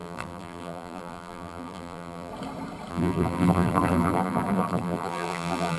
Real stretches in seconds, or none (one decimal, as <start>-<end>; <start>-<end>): 2.3-2.9